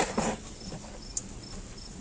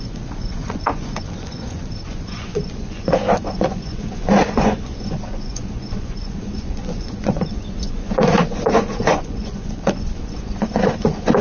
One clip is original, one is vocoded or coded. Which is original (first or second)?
first